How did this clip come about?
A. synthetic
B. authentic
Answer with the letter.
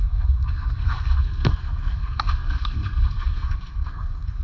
A